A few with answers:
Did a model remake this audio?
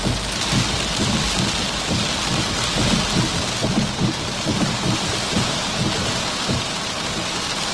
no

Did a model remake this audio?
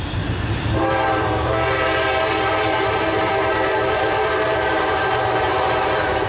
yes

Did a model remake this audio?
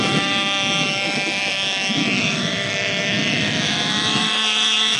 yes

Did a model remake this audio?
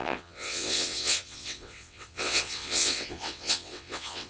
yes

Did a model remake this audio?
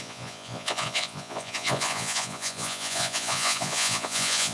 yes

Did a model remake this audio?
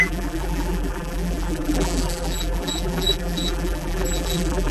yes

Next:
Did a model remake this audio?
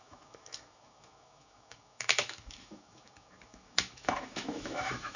yes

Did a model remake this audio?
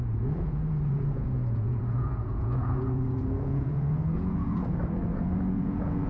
yes